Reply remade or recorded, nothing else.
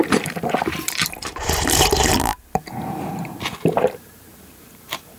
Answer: remade